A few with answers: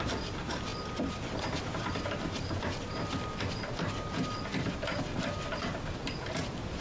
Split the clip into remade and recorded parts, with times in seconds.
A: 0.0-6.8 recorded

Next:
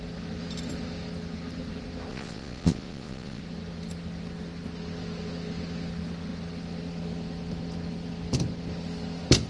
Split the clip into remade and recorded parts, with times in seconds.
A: 0.0-2.1 recorded; 2.1-3.4 remade; 3.4-9.5 recorded

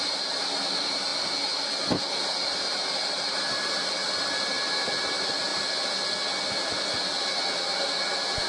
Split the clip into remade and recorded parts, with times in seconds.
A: 0.0-1.1 remade; 1.1-2.0 recorded; 2.0-5.5 remade; 5.5-8.5 recorded

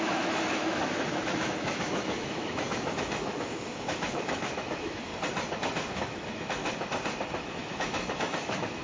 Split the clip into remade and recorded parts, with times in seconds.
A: 0.0-5.1 remade; 5.1-5.9 recorded; 5.9-6.6 remade; 6.6-7.4 recorded; 7.4-8.8 remade